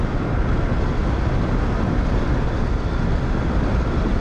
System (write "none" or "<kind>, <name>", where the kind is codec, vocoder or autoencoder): none